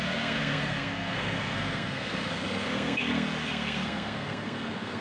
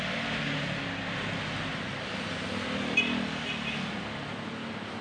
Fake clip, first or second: first